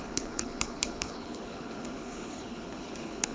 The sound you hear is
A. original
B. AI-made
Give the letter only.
B